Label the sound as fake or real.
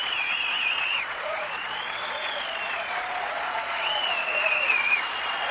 fake